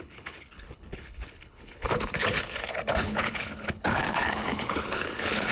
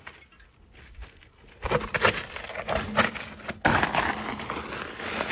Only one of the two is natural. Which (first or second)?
second